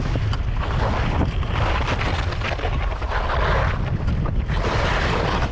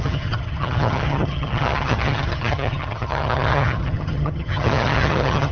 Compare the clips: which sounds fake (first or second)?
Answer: second